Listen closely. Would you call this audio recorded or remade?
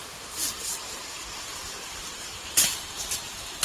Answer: remade